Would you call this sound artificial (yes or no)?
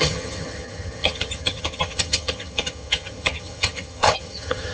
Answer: yes